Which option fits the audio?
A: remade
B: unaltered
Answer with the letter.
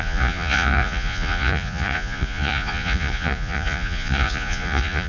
A